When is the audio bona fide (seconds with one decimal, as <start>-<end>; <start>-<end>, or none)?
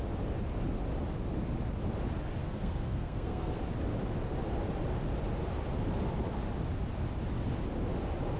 0.0-2.4; 3.6-8.4